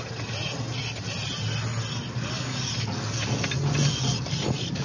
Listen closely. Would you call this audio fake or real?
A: real